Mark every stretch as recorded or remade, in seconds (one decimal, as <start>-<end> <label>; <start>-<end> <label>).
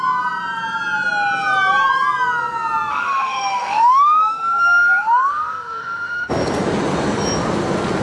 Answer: 0.0-2.9 recorded; 2.9-6.3 remade; 6.3-8.0 recorded